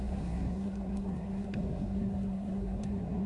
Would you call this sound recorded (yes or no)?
no